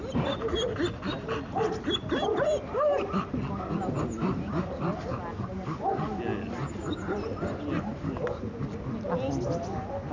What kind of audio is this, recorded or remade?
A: recorded